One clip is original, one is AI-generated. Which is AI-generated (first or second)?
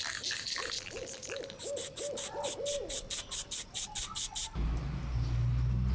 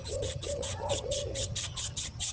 second